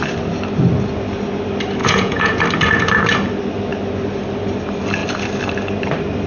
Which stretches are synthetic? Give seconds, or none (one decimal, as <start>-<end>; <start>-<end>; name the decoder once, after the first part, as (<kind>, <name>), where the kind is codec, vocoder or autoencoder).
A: 1.8-2.4 (vocoder, Vocos)